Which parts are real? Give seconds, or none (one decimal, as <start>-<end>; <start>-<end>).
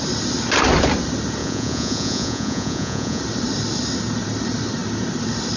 0.0-1.4; 3.2-5.6